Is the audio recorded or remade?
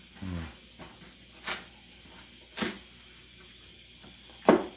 recorded